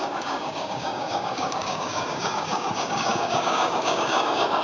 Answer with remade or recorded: remade